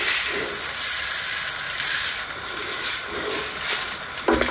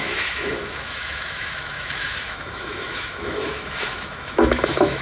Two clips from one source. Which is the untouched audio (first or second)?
first